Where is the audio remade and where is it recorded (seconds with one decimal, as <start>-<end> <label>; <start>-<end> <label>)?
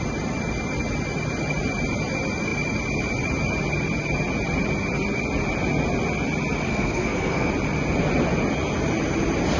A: 0.0-6.7 recorded; 6.7-7.5 remade; 7.5-9.6 recorded